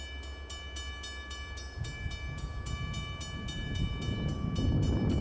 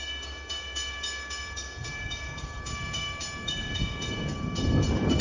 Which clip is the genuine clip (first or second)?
first